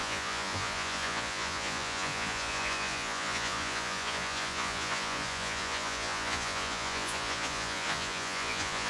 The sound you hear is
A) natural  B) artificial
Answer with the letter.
B